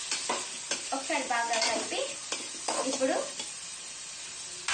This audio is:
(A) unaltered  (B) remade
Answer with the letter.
A